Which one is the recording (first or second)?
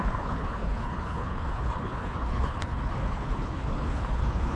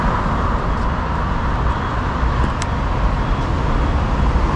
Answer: second